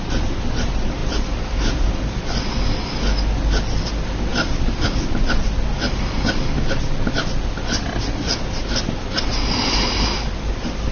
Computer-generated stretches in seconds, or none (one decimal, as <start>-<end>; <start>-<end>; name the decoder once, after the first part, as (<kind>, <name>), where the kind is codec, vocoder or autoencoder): 1.0-2.2 (vocoder, BigVGAN v2); 4.3-5.5